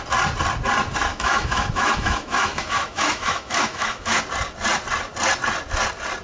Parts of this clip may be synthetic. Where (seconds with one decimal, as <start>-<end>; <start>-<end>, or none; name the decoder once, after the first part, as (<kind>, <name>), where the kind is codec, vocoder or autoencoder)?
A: 1.1-4.2 (autoencoder, DAC-VAE)